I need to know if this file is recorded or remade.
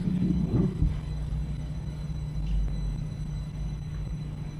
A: remade